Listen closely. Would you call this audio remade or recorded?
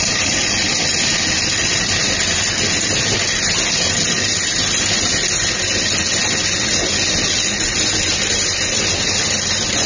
recorded